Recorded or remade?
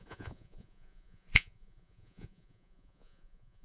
remade